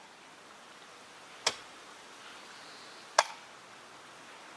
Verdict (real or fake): real